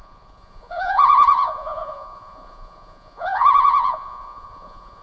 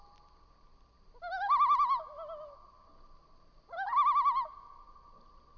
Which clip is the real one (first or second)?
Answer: second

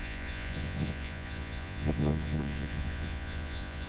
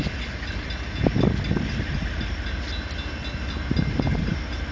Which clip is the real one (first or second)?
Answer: second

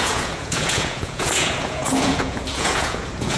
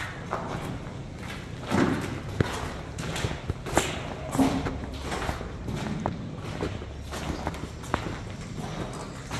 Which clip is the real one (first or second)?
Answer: second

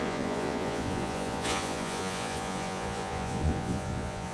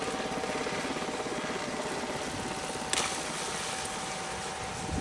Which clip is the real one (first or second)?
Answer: second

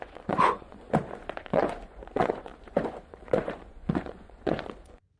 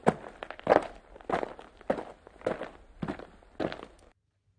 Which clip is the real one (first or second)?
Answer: second